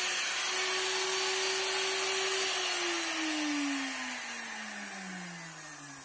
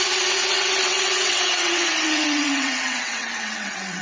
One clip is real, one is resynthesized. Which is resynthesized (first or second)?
second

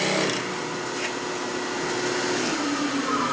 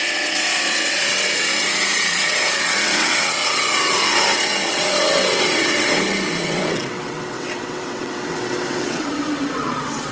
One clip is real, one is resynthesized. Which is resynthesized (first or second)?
second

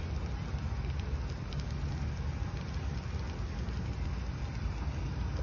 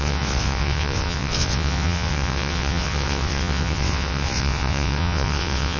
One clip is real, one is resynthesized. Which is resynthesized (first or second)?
second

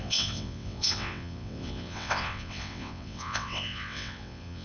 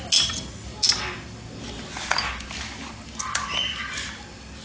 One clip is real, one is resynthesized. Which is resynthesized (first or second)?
first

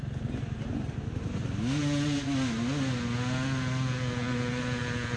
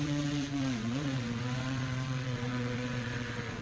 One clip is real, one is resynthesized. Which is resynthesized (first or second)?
second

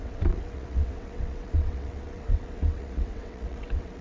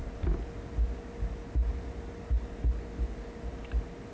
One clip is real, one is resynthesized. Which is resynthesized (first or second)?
first